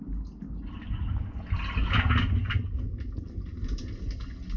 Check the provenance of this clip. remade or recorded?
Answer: recorded